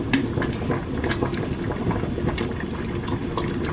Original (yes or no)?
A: yes